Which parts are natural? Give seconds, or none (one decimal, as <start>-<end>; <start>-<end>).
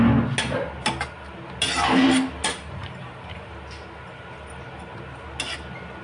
0.0-2.8; 3.5-6.0